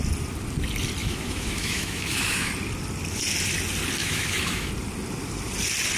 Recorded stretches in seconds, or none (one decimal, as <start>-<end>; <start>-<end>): 0.0-1.0; 2.5-4.0; 4.7-6.0